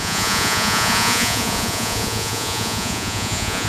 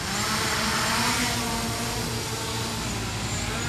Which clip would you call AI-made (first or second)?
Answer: first